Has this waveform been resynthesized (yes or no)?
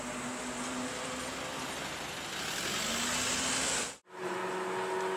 no